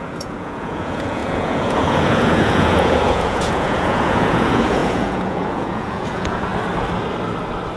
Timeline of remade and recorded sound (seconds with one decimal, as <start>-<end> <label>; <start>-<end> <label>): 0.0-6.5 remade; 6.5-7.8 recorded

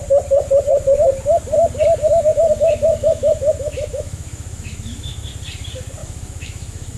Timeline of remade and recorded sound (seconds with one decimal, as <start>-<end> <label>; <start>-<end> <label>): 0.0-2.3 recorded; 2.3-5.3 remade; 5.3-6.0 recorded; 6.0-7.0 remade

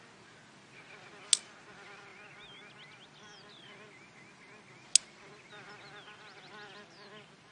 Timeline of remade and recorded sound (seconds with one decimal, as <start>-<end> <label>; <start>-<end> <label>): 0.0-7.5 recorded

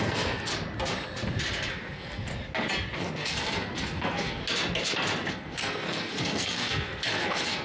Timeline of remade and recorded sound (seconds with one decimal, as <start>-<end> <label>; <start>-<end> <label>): 0.0-0.5 remade; 0.5-1.7 recorded; 1.7-2.3 remade; 2.3-3.0 recorded; 3.0-4.4 remade; 4.4-5.3 recorded; 5.3-7.6 remade

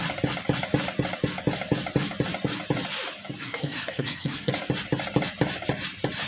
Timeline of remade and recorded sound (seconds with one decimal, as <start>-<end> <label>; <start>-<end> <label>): 0.0-3.4 recorded; 3.4-4.5 remade; 4.5-6.3 recorded

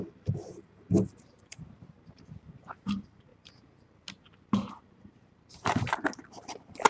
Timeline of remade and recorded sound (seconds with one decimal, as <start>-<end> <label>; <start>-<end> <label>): 0.0-3.3 remade; 3.3-4.8 recorded; 4.8-6.9 remade

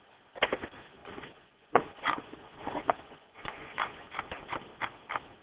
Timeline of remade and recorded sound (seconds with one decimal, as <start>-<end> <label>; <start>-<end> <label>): 0.0-1.0 recorded; 1.0-4.1 remade; 4.1-5.4 recorded

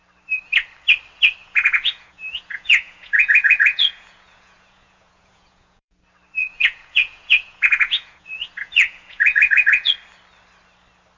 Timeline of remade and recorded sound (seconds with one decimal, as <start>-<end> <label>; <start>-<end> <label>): 0.0-1.4 recorded; 1.4-6.0 remade; 6.0-6.4 recorded; 6.4-9.9 remade; 9.9-11.2 recorded